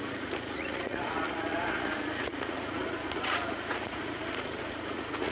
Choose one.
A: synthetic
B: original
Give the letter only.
A